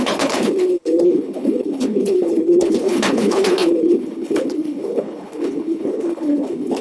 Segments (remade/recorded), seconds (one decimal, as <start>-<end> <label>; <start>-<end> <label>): 0.0-6.8 remade